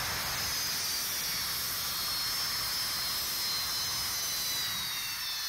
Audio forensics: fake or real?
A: real